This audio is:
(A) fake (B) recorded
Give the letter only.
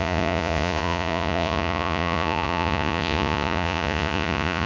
A